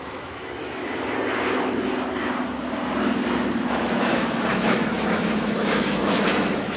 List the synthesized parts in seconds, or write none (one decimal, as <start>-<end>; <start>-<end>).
0.0-0.8; 3.7-6.8